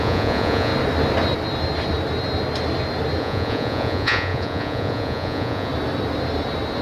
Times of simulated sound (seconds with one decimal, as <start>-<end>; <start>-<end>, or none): 0.0-0.7; 3.2-5.7

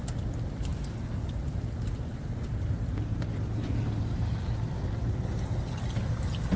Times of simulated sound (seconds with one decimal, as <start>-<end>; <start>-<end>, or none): none

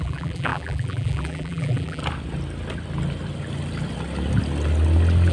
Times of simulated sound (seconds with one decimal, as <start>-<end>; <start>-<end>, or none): 0.0-2.0

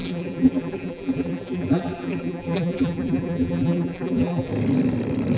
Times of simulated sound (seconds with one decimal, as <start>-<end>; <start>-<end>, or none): 0.0-4.5

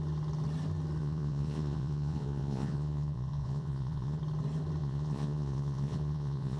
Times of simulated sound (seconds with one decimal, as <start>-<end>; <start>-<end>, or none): 1.0-4.2; 4.8-6.6

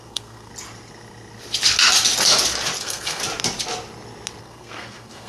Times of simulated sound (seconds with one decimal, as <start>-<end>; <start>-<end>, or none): 0.0-0.5; 2.8-3.2; 4.4-5.3

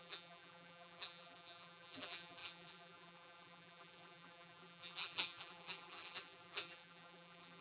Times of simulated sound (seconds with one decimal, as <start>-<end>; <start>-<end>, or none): 0.0-7.6

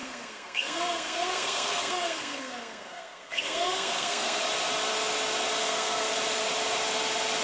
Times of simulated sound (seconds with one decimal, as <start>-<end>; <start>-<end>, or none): 0.0-4.4; 5.6-6.1